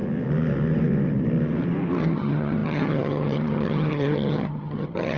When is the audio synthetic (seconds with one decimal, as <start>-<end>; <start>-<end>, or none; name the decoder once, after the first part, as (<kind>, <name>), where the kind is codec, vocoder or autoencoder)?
2.0-5.2 (vocoder, HiFi-GAN)